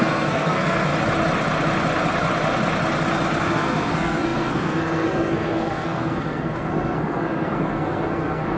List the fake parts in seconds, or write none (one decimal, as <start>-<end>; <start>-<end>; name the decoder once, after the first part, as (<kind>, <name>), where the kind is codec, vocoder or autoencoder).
0.0-0.9 (codec, SNAC); 3.4-8.6